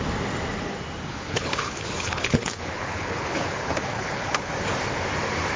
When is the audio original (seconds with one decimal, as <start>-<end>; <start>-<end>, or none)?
0.0-1.1; 4.5-5.6